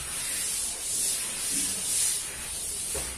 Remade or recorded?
recorded